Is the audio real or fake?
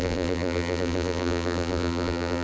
fake